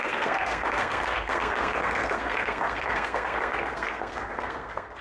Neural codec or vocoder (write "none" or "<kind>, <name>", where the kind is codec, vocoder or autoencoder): codec, SNAC